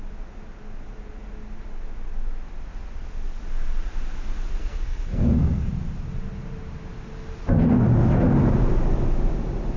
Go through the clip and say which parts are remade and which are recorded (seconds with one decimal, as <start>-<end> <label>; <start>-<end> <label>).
0.0-4.6 recorded; 4.6-5.7 remade; 5.7-9.8 recorded